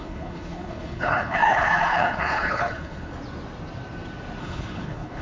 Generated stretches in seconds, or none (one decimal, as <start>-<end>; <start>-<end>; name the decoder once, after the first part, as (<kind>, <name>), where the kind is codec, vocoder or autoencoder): 0.0-3.1 (codec, HILCodec); 4.4-5.2